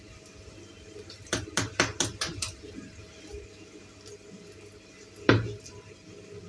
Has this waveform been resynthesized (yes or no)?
no